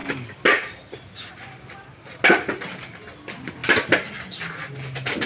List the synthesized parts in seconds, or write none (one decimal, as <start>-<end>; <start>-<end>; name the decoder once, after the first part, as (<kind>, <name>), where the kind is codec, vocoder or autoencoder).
none